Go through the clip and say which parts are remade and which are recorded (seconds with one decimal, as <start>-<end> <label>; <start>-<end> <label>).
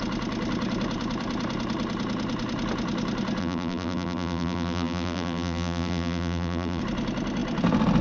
0.0-3.4 recorded; 3.4-6.8 remade; 6.8-8.0 recorded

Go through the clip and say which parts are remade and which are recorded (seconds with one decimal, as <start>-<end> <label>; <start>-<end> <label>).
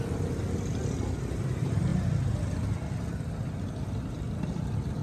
0.0-5.0 recorded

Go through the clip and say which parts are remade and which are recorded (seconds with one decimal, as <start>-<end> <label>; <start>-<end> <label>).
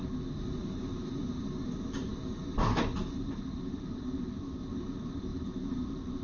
0.0-6.2 remade